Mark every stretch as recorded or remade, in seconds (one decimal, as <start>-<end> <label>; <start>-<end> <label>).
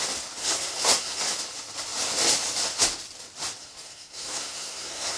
0.0-0.4 recorded; 0.4-1.2 remade; 1.2-3.6 recorded; 3.6-5.2 remade